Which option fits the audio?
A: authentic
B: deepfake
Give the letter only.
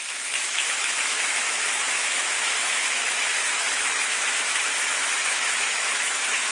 B